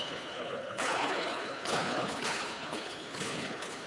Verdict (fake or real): fake